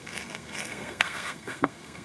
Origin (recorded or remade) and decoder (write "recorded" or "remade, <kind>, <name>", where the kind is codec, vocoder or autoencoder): remade, codec, SNAC